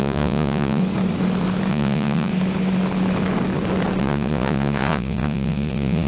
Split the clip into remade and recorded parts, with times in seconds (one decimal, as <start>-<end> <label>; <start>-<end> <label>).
0.0-0.8 remade; 0.8-1.7 recorded; 1.7-2.3 remade; 2.3-4.0 recorded; 4.0-6.1 remade